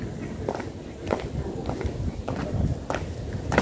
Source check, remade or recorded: recorded